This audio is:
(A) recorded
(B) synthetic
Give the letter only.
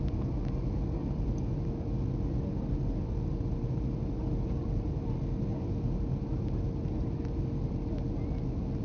A